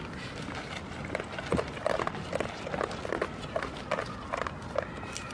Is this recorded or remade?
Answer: recorded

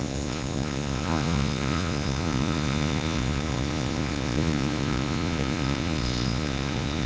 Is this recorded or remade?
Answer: remade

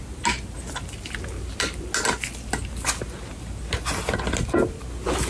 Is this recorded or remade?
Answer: recorded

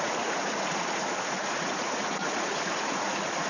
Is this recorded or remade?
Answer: remade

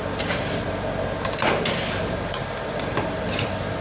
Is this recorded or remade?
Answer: recorded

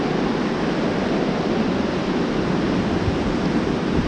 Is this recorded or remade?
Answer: recorded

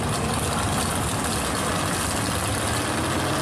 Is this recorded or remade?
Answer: recorded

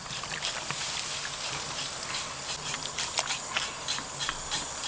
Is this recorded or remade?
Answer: recorded